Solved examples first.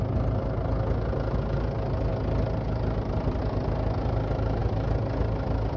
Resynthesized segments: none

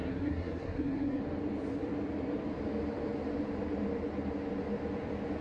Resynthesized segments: 0.0-1.2

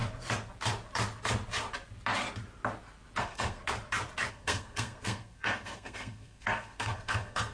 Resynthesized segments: 3.2-3.6; 4.3-7.5

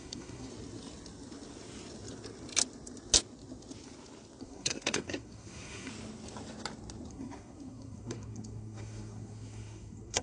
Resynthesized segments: 0.0-0.5; 4.4-5.9; 7.1-10.2

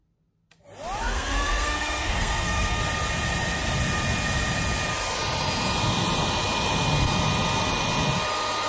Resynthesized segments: 1.0-2.8

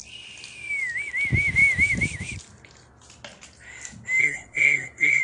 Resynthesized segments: 4.2-5.2

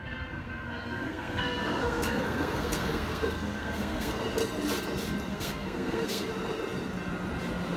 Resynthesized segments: 0.0-4.2; 5.3-6.3

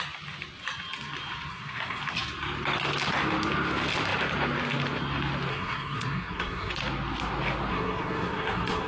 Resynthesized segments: 1.5-2.0; 5.5-6.7; 7.7-8.9